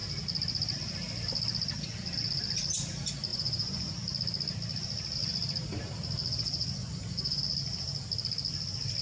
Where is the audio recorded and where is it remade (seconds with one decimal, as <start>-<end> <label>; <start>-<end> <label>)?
0.0-3.3 recorded; 3.3-3.9 remade; 3.9-6.8 recorded; 6.8-7.4 remade; 7.4-9.0 recorded